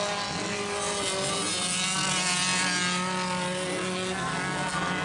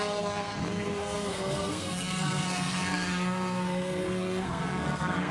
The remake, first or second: second